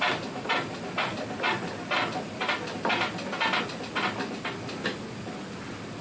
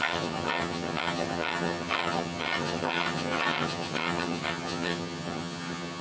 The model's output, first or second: second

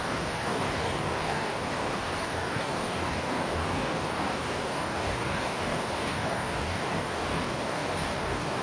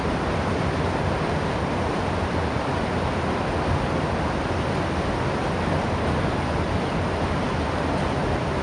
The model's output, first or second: first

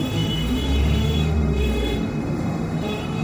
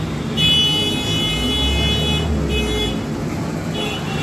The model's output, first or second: first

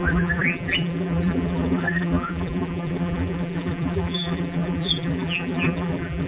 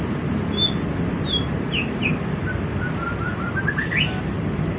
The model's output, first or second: first